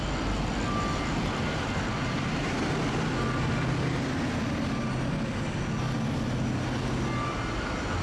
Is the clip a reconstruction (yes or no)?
no